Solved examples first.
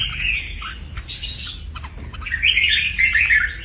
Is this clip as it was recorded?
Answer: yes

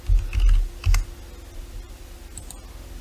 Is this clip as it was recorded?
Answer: yes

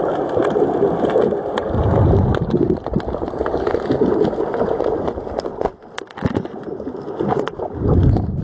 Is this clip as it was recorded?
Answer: yes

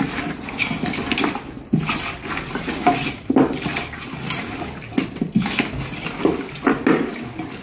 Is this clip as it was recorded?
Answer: yes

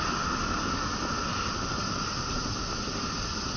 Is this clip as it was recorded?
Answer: yes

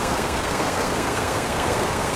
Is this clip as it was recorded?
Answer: no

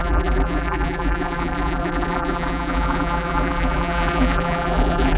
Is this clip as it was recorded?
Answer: no